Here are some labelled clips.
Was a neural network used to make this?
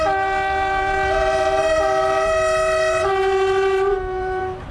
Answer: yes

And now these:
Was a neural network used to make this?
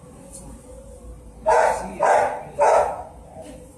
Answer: no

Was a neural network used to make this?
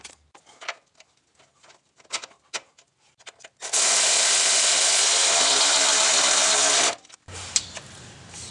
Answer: no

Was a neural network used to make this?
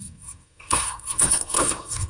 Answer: yes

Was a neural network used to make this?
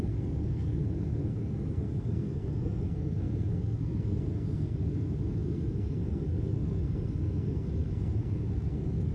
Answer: yes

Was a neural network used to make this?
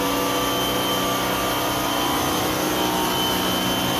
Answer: no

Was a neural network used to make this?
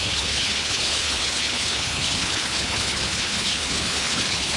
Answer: yes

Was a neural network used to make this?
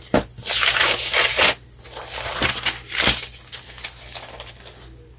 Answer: no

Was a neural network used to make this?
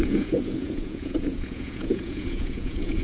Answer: yes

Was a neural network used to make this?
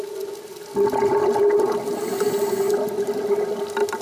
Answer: no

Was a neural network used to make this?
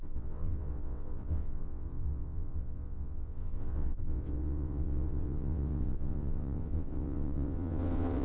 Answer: yes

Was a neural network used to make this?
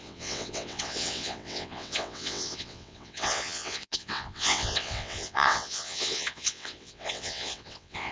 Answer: yes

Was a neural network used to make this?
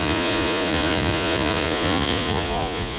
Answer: yes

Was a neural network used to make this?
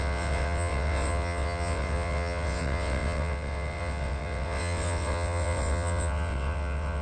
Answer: yes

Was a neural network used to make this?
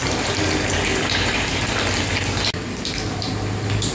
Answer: no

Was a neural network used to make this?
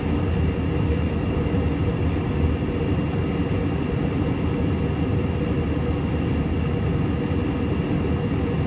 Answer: no